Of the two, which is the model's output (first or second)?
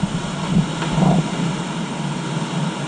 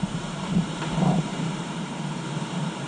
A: second